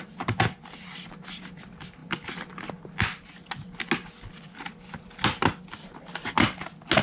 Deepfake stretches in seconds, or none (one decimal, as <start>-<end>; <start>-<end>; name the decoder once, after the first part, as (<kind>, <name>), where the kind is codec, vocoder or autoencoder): none